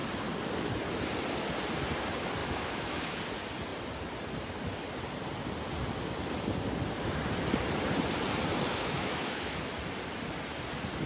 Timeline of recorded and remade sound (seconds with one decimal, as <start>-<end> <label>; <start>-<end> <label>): 0.0-2.4 recorded; 2.4-3.2 remade; 3.2-8.7 recorded; 8.7-9.7 remade; 9.7-11.1 recorded